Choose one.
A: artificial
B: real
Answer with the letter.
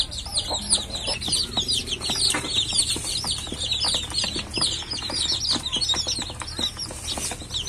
B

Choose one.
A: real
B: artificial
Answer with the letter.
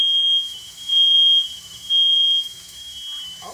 B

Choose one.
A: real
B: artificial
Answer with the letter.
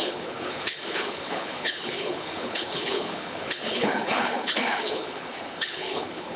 B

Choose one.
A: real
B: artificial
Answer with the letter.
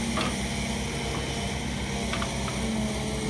A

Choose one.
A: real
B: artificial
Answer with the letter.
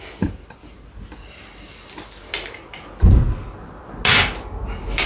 A